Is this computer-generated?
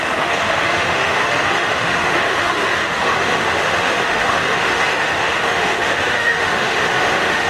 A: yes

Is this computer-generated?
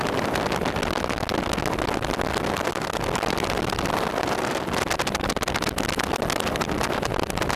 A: no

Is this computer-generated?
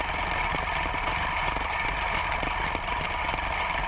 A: no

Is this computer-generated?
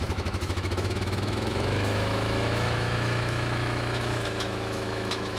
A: yes